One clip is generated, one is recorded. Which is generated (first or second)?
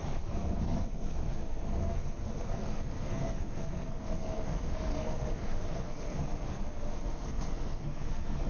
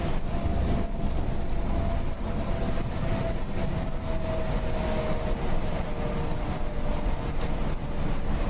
first